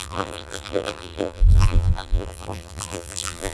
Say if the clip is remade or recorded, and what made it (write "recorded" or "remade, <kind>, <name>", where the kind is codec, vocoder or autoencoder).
remade, vocoder, BigVGAN v2